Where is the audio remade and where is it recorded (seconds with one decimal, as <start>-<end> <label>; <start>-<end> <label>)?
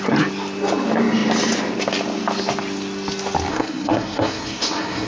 0.0-3.5 recorded; 3.5-5.1 remade